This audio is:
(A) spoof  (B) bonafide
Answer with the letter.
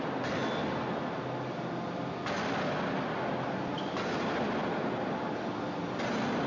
B